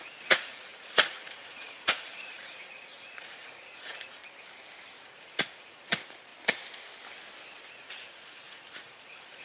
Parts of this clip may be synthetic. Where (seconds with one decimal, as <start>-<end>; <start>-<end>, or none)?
0.0-4.2; 4.9-6.3; 7.7-9.4